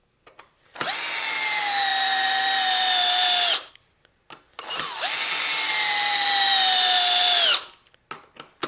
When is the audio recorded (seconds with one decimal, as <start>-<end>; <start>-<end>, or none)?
0.0-1.9; 3.7-8.7